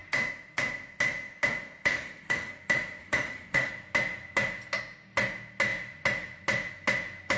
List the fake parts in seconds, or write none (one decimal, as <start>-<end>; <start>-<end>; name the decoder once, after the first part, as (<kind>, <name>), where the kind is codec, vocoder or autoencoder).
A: 1.9-2.5 (autoencoder, DAC-VAE); 3.0-3.7